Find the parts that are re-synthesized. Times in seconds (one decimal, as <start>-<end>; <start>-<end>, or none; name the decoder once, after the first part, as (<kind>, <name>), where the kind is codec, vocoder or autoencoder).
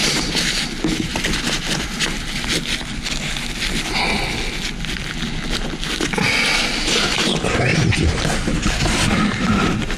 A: none